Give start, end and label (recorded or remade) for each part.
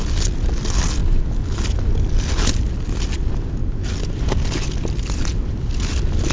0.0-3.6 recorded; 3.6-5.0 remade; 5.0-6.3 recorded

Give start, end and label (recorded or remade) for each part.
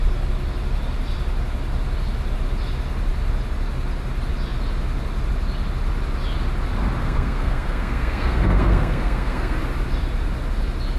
0.0-7.0 recorded; 7.0-9.6 remade; 9.6-11.0 recorded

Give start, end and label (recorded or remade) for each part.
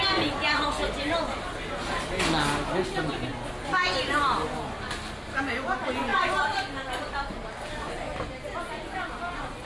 0.0-9.7 recorded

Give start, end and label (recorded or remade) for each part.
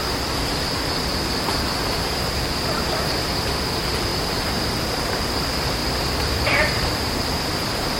0.0-4.1 recorded; 4.1-5.1 remade; 5.1-5.8 recorded; 5.8-7.1 remade; 7.1-8.0 recorded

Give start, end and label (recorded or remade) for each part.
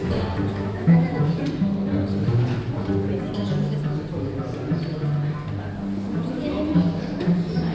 0.0-0.5 recorded; 0.5-1.4 remade; 1.4-7.7 recorded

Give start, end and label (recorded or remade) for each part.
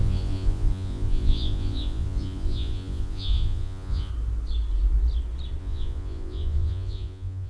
0.0-4.1 remade; 4.1-5.6 recorded; 5.6-7.5 remade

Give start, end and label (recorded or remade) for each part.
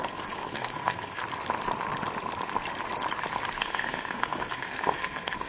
0.0-1.2 remade; 1.2-3.6 recorded; 3.6-5.5 remade